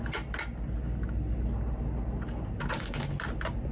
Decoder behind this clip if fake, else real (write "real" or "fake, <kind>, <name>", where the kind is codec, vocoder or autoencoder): real